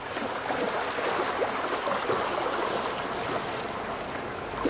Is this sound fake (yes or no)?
no